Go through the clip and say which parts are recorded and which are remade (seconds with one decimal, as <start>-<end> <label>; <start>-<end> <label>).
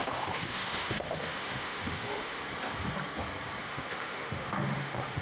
0.0-2.4 remade; 2.4-3.6 recorded; 3.6-5.2 remade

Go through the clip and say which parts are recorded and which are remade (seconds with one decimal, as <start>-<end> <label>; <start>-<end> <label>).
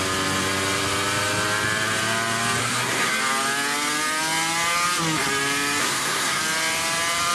0.0-2.6 recorded; 2.6-3.1 remade; 3.1-5.8 recorded; 5.8-6.4 remade; 6.4-7.3 recorded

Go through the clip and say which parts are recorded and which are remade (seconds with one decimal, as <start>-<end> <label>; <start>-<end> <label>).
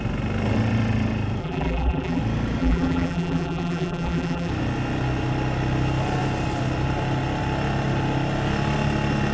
0.0-1.4 recorded; 1.4-2.2 remade; 2.2-2.6 recorded; 2.6-4.5 remade; 4.5-9.3 recorded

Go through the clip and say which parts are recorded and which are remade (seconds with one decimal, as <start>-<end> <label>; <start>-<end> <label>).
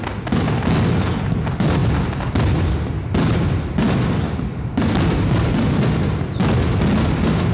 0.0-7.5 recorded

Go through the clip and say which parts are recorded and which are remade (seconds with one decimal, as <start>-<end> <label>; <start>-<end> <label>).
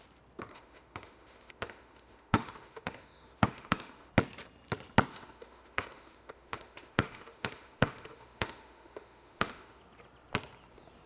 0.0-0.5 recorded; 0.5-4.1 remade; 4.1-5.1 recorded; 5.1-9.8 remade; 9.8-11.1 recorded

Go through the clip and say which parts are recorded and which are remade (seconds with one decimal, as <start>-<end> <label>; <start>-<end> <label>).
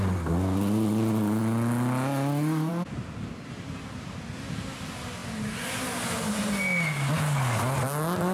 0.0-8.3 recorded